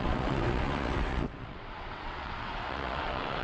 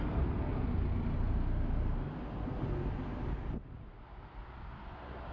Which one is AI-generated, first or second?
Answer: first